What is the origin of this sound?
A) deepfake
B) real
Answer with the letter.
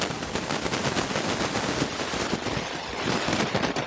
B